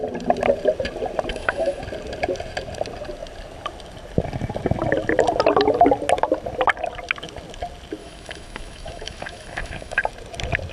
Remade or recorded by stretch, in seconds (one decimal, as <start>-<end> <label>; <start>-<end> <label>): 0.0-1.3 recorded; 1.3-1.8 remade; 1.8-8.0 recorded; 8.0-10.1 remade; 10.1-10.7 recorded